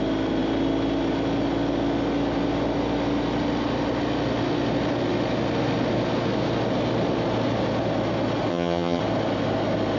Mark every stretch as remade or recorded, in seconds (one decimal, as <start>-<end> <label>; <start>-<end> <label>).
0.0-8.5 recorded; 8.5-9.0 remade; 9.0-10.0 recorded